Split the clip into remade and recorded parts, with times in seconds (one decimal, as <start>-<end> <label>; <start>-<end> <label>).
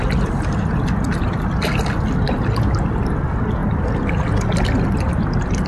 0.0-5.7 recorded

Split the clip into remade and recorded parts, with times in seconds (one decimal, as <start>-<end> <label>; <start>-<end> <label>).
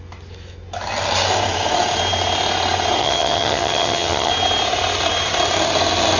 0.0-3.0 recorded; 3.0-4.3 remade; 4.3-6.2 recorded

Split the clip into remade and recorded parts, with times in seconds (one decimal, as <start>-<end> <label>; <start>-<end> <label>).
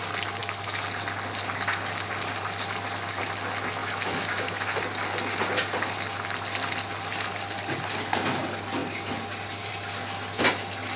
0.0-3.8 recorded; 3.8-4.8 remade; 4.8-11.0 recorded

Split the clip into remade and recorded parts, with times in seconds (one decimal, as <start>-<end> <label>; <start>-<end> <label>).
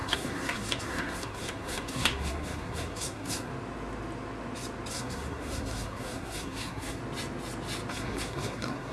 0.0-3.5 remade; 3.5-4.9 recorded; 4.9-7.0 remade; 7.0-7.9 recorded; 7.9-8.9 remade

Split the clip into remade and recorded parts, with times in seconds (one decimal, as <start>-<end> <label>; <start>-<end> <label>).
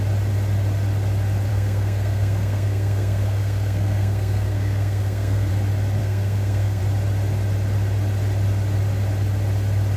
0.0-1.5 recorded; 1.5-5.5 remade; 5.5-6.0 recorded; 6.0-6.8 remade; 6.8-10.0 recorded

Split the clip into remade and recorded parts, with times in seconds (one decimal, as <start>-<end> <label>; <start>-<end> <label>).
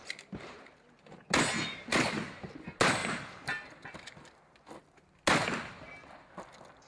0.0-0.7 remade; 0.7-1.6 recorded; 1.6-2.4 remade; 2.4-3.0 recorded; 3.0-4.6 remade; 4.6-6.9 recorded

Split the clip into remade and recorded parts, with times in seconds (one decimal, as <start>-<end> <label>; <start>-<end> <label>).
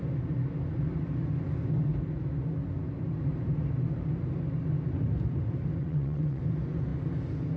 0.0-5.8 recorded; 5.8-6.4 remade; 6.4-7.6 recorded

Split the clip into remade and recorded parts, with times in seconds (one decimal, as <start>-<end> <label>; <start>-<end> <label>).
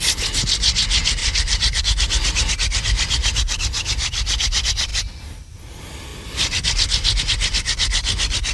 0.0-1.2 recorded; 1.2-1.8 remade; 1.8-8.5 recorded